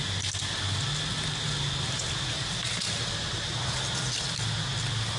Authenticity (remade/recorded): recorded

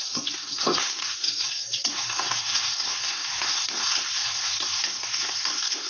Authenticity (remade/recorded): remade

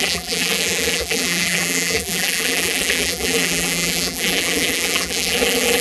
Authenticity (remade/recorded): remade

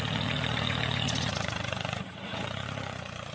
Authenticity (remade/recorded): remade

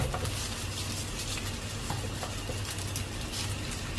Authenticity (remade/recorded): recorded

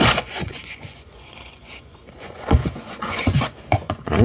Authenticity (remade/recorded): remade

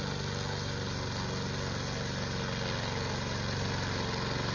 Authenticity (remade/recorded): recorded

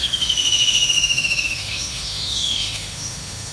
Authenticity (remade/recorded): remade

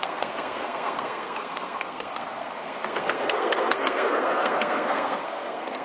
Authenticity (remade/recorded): remade